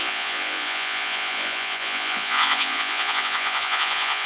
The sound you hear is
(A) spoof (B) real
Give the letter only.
A